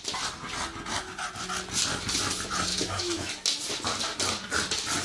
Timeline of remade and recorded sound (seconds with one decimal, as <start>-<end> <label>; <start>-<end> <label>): 0.0-2.7 recorded; 2.7-3.3 remade; 3.3-5.0 recorded